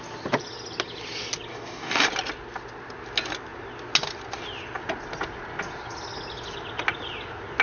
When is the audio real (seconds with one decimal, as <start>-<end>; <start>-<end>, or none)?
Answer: 0.0-1.5; 2.1-7.6